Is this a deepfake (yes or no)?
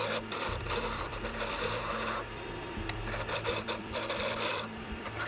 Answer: yes